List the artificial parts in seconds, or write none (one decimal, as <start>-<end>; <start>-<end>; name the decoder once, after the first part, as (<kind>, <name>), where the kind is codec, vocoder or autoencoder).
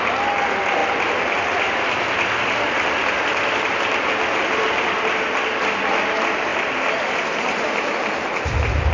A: none